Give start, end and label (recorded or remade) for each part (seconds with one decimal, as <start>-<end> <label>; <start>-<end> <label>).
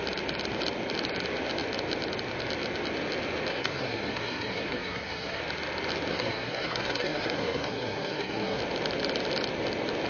0.0-3.5 recorded; 3.5-5.4 remade; 5.4-6.1 recorded; 6.1-8.6 remade; 8.6-10.1 recorded